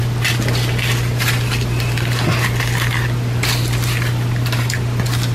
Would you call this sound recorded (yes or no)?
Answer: yes